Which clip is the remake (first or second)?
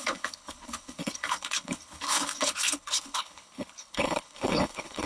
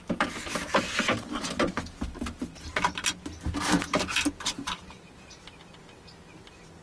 first